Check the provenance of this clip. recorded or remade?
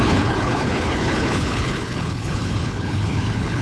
remade